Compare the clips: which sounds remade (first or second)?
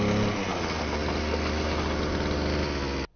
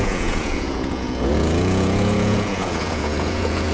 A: second